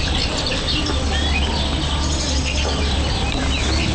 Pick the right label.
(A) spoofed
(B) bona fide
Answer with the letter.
B